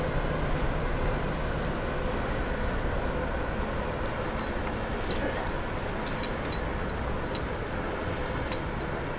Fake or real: real